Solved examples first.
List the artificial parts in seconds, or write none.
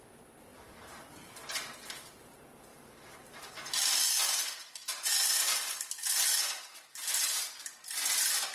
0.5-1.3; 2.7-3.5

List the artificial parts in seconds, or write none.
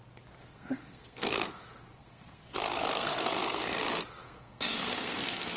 0.4-3.8; 4.2-5.6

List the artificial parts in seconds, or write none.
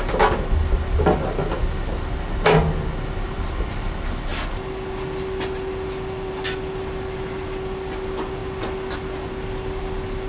none